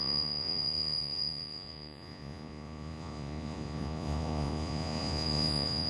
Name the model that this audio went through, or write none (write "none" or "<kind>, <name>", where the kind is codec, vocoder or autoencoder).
vocoder, Vocos